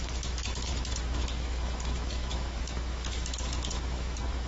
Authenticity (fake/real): fake